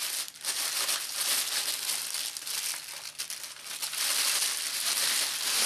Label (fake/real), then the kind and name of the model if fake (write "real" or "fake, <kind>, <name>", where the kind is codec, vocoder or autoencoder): real